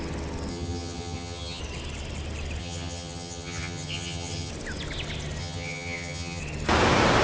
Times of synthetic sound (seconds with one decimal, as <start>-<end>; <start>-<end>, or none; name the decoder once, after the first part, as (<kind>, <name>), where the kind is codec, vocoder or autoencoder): 0.5-1.6 (vocoder, HiFi-GAN); 2.6-4.5; 5.4-6.4